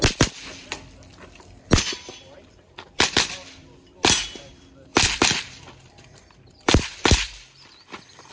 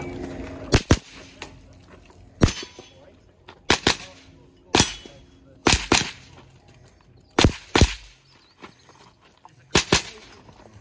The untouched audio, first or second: second